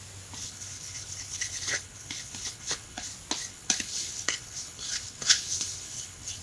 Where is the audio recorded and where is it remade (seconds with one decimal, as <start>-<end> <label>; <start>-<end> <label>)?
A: 0.0-0.4 recorded; 0.4-3.1 remade; 3.1-3.5 recorded; 3.5-6.4 remade